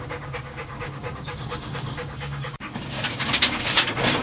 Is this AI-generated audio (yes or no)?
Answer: yes